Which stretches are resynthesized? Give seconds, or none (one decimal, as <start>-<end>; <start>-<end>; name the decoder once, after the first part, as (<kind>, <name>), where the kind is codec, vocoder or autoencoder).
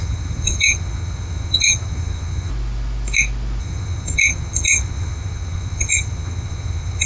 0.0-2.5 (vocoder, HiFi-GAN); 3.6-7.1